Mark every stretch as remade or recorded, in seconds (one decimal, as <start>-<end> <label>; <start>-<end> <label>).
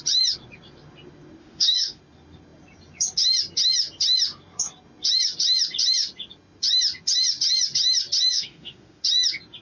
0.0-1.4 recorded; 1.4-2.0 remade; 2.0-8.3 recorded; 8.3-9.0 remade; 9.0-9.6 recorded